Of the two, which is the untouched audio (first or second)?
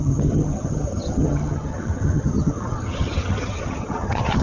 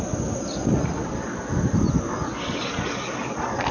second